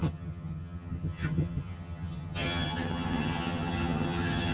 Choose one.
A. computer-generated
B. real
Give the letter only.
A